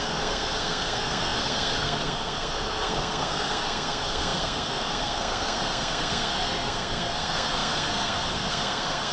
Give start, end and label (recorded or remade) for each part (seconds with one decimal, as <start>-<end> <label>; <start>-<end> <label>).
0.0-9.1 remade